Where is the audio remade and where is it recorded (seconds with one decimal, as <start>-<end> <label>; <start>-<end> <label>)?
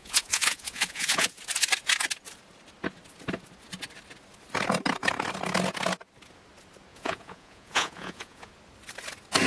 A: 0.0-1.4 remade; 1.4-6.9 recorded; 6.9-8.5 remade; 8.5-9.5 recorded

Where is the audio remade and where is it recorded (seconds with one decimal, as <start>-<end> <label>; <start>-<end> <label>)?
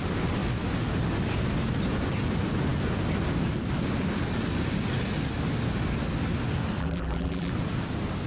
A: 0.0-6.8 recorded; 6.8-7.5 remade; 7.5-8.3 recorded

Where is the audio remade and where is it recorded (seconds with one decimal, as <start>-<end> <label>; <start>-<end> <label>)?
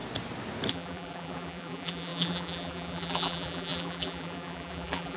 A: 0.0-0.7 recorded; 0.7-5.2 remade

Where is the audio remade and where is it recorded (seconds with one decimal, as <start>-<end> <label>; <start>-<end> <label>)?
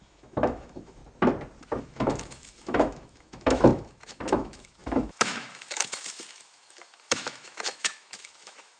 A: 0.0-1.0 remade; 1.0-1.8 recorded; 1.8-8.8 remade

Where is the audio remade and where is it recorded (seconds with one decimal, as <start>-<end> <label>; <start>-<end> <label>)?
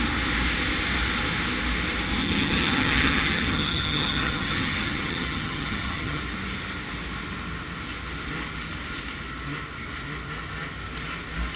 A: 0.0-2.2 recorded; 2.2-6.2 remade; 6.2-11.6 recorded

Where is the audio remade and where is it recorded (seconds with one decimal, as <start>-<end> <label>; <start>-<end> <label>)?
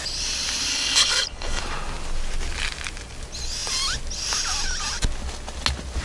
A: 0.0-0.7 recorded; 0.7-1.6 remade; 1.6-6.0 recorded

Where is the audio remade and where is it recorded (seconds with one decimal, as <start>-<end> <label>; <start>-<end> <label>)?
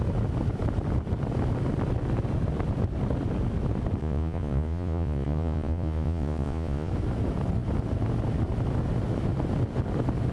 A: 0.0-4.0 recorded; 4.0-6.9 remade; 6.9-10.3 recorded